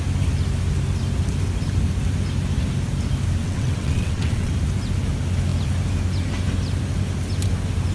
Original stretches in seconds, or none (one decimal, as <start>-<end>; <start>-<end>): 0.0-3.4; 4.5-7.9